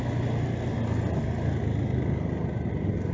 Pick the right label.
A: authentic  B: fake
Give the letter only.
A